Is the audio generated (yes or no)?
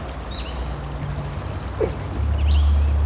no